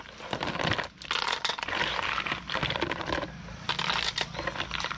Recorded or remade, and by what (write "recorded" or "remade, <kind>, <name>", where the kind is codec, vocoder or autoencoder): recorded